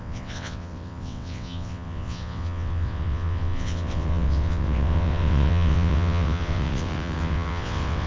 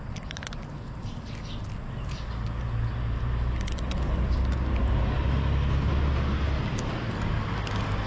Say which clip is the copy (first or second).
first